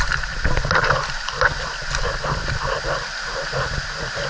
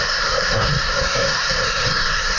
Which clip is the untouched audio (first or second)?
first